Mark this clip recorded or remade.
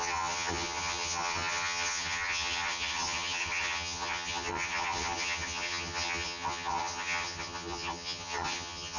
remade